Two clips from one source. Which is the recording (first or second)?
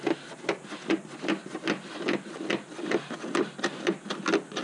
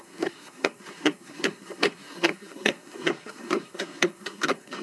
first